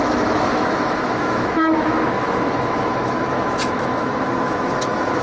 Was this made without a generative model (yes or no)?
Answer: no